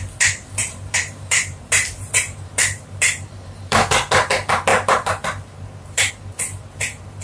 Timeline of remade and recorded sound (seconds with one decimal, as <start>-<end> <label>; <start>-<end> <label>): 0.0-0.6 recorded; 0.6-3.9 remade; 3.9-4.7 recorded; 4.7-6.1 remade; 6.1-7.2 recorded